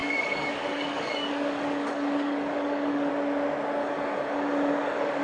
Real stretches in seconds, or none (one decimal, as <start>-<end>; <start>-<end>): 3.1-3.8

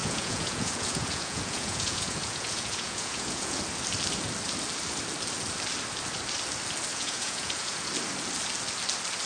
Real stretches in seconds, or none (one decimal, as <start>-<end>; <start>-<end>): 3.6-6.9; 7.9-9.3

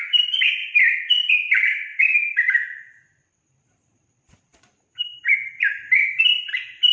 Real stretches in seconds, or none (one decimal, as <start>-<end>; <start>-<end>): none